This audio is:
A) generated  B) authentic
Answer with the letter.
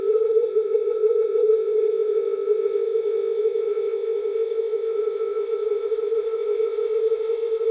A